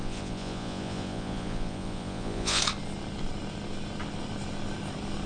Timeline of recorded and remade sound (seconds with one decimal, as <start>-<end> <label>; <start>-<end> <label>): 0.0-2.6 remade; 2.6-5.3 recorded